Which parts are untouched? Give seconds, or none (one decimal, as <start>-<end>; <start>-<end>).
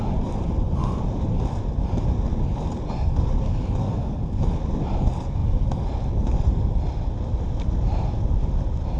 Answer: 0.0-3.8; 4.4-9.0